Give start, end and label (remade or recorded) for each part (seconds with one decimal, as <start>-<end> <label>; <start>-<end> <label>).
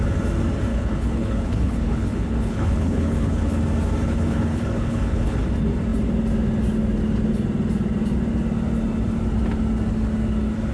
0.0-0.7 recorded; 0.7-3.6 remade; 3.6-4.0 recorded; 4.0-5.4 remade; 5.4-10.7 recorded